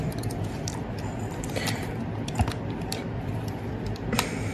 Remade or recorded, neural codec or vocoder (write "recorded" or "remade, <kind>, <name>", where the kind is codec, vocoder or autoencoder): remade, vocoder, BigVGAN v2